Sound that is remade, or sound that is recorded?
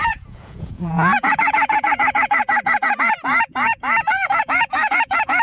remade